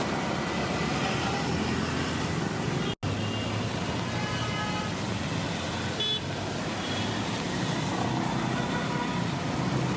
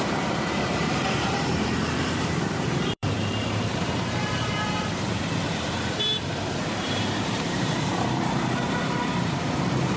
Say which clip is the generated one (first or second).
second